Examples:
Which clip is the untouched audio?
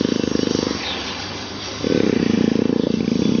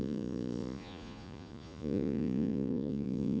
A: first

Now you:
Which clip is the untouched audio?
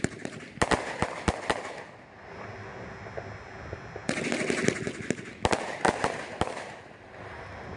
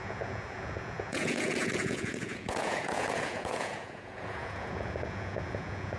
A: first